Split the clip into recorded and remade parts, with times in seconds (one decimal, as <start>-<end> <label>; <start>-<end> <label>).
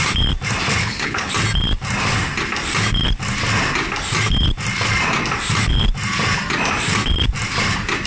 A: 0.0-0.8 recorded; 0.8-1.3 remade; 1.3-8.1 recorded